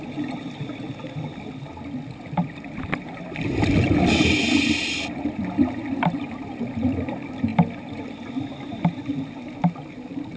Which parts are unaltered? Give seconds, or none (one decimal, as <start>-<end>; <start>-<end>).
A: 0.0-10.4